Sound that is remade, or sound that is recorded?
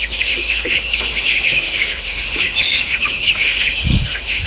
remade